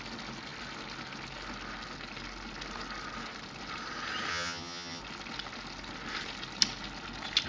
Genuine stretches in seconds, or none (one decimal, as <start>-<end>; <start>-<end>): 0.0-4.3; 5.0-7.5